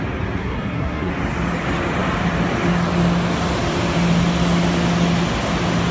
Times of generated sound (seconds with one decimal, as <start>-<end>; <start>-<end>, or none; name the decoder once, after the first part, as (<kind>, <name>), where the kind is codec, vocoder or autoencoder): 0.4-1.1 (codec, SNAC)